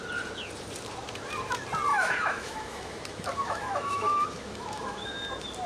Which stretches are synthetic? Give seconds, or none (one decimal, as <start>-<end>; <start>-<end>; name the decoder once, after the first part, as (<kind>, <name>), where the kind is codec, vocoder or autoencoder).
1.9-5.1 (autoencoder, DAC-VAE)